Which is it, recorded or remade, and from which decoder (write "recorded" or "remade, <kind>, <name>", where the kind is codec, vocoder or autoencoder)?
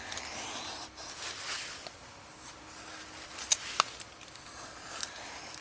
recorded